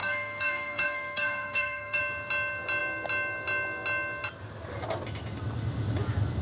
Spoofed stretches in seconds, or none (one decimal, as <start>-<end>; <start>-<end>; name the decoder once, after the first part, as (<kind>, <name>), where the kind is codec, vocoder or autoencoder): 0.0-2.0 (codec, SNAC)